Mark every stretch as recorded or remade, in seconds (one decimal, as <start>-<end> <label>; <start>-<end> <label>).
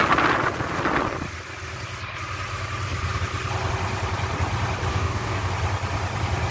0.0-4.9 recorded; 4.9-5.5 remade; 5.5-6.5 recorded